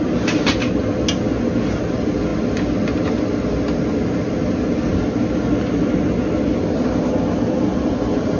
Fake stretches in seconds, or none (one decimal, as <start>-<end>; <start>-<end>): none